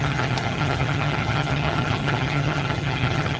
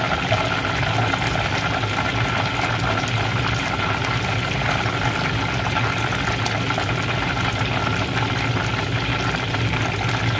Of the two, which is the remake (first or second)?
first